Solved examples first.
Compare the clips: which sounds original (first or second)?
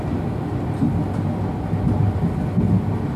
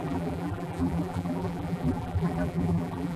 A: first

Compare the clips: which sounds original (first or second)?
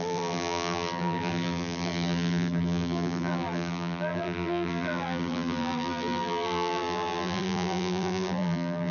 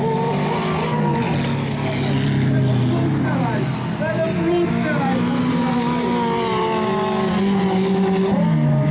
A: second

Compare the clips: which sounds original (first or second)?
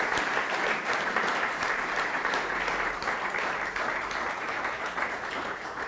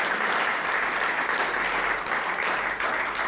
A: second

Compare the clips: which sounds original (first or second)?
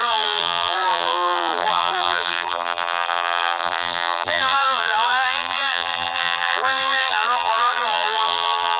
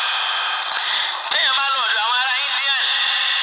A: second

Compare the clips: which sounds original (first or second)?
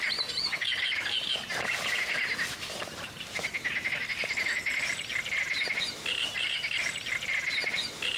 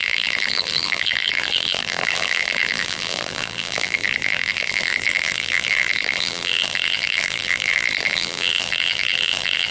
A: first